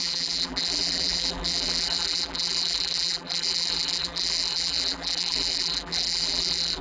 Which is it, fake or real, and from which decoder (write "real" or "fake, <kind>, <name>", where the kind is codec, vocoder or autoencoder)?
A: fake, vocoder, BigVGAN v2